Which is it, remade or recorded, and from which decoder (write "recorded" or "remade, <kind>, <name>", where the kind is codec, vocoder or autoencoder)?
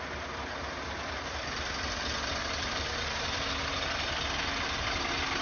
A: recorded